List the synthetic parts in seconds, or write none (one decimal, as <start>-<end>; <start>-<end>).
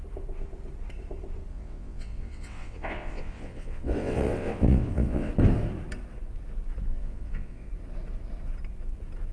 1.5-5.3; 6.9-7.7